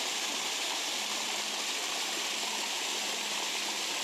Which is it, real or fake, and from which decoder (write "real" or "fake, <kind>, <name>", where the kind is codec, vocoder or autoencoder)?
real